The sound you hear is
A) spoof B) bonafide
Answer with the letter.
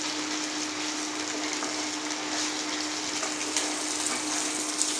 B